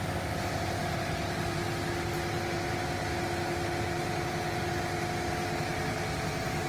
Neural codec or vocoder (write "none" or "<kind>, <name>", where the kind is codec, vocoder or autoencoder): none